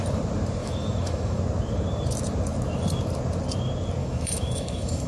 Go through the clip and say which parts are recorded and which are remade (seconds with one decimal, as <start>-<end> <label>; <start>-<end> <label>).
0.0-0.6 recorded; 0.6-1.4 remade; 1.4-4.0 recorded; 4.0-5.1 remade